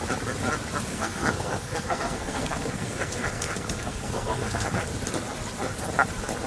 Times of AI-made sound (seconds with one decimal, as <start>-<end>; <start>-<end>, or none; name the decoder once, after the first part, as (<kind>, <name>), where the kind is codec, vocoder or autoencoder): 0.9-4.8 (codec, SNAC)